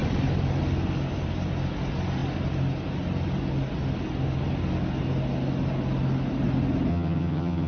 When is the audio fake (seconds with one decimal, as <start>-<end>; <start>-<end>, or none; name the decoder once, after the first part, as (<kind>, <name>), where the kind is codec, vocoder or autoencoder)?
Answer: 6.9-7.7 (vocoder, HiFi-GAN)